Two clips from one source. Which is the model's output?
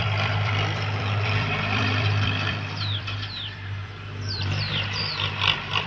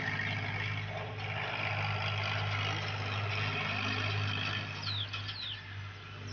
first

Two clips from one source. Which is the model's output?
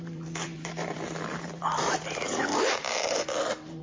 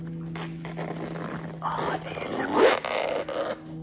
first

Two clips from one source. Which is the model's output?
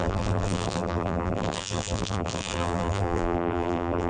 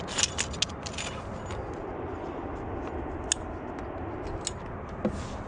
first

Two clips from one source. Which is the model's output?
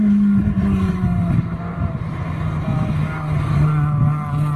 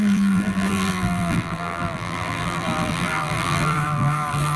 second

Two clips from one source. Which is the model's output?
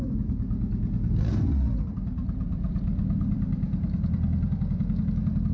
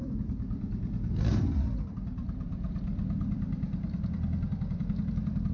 second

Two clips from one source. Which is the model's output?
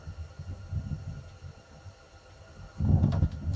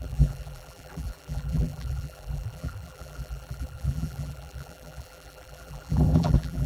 second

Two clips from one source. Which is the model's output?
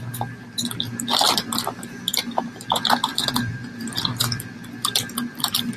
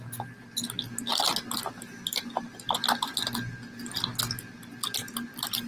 first